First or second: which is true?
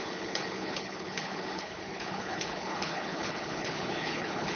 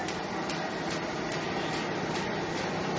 second